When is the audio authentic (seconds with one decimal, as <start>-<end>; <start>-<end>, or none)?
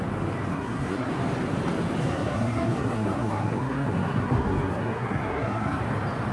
0.0-0.5; 1.1-2.0; 5.8-6.3